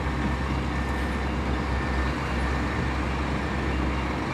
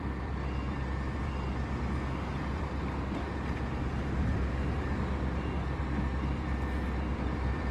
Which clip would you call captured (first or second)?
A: first